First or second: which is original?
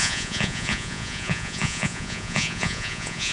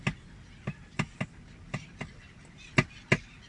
second